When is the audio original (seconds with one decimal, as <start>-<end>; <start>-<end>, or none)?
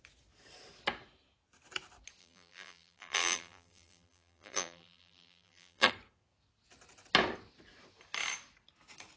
0.0-2.2; 5.9-9.2